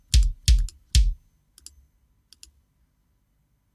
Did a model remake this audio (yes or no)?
no